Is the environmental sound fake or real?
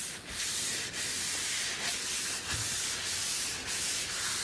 real